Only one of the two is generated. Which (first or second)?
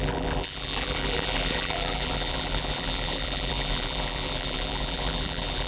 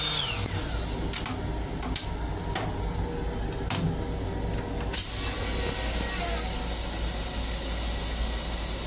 first